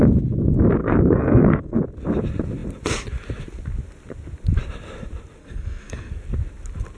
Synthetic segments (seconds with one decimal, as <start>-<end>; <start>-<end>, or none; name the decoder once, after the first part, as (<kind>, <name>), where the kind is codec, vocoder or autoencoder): 0.8-1.8 (codec, SNAC); 5.4-6.1

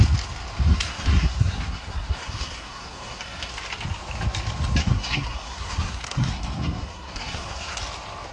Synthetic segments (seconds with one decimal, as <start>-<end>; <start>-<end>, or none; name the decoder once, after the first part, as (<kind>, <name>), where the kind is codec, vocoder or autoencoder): 0.7-3.5 (codec, SNAC); 4.8-7.8